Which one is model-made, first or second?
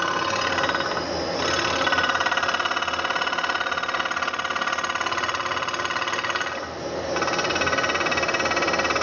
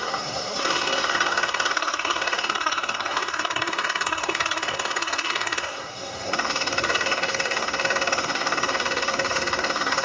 second